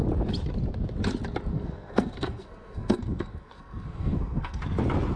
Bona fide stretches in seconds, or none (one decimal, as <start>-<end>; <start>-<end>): 0.0-1.5; 4.6-5.2